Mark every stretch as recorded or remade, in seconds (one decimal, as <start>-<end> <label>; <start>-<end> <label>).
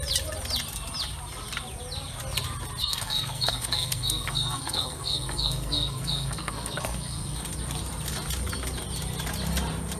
0.0-2.8 recorded; 2.8-7.5 remade; 7.5-10.0 recorded